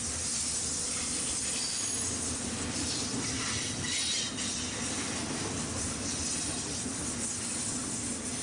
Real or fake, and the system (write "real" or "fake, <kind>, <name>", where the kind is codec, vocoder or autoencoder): real